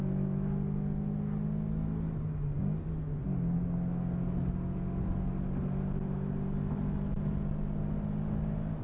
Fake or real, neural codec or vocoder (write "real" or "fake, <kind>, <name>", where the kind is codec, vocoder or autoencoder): real